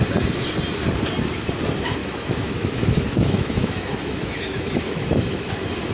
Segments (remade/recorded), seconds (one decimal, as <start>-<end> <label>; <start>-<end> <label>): 0.0-2.0 recorded; 2.0-5.5 remade; 5.5-5.9 recorded